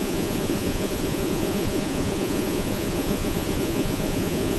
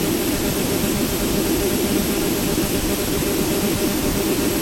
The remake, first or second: first